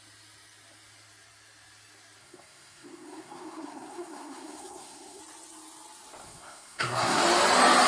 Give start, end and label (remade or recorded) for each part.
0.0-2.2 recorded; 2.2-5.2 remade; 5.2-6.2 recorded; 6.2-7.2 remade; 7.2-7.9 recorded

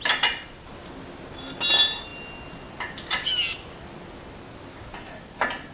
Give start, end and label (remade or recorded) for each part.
0.0-5.7 recorded

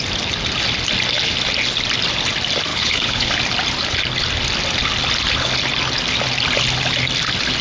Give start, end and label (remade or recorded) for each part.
0.0-2.7 recorded; 2.7-3.3 remade; 3.3-7.6 recorded

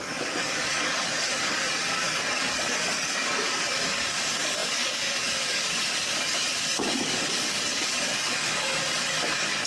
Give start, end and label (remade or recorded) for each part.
0.0-9.7 remade

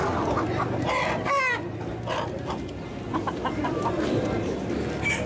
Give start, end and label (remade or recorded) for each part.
0.0-5.3 recorded

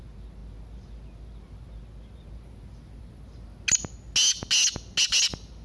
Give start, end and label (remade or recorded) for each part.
0.0-5.6 recorded